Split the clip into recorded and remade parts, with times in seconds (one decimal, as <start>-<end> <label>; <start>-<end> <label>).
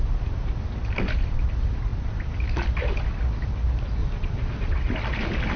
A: 0.0-4.0 recorded; 4.0-4.9 remade; 4.9-5.6 recorded